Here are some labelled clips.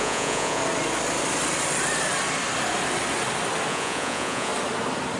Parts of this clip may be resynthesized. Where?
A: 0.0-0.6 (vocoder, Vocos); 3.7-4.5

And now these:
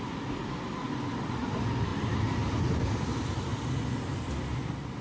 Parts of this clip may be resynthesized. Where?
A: none

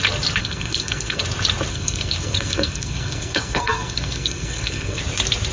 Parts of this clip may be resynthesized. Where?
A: 0.4-1.2 (codec, SNAC); 1.7-5.0

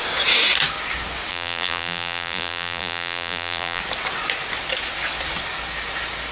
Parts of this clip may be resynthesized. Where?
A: 1.3-3.8 (vocoder, BigVGAN v2)